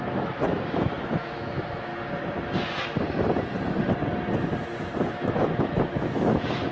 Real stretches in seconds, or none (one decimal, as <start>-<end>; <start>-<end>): 1.9-5.1